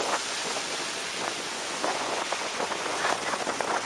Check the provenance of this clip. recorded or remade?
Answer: remade